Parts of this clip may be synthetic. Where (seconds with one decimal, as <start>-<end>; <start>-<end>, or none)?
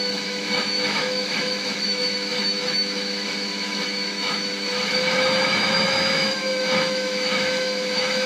0.0-8.3